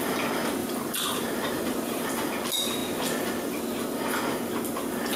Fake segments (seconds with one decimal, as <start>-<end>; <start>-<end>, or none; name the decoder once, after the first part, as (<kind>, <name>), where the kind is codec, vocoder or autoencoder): 0.6-2.1 (vocoder, BigVGAN v2)